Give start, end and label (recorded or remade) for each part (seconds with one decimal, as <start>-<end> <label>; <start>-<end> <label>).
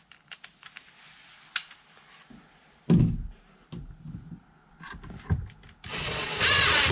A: 0.0-5.9 recorded; 5.9-6.4 remade; 6.4-6.9 recorded